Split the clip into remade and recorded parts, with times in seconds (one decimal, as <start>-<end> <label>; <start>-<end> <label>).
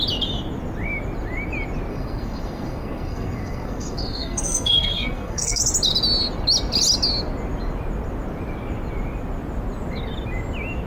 0.0-1.9 recorded; 1.9-5.6 remade; 5.6-10.9 recorded